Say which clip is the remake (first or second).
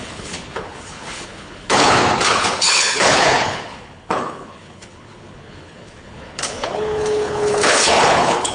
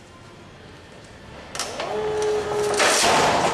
first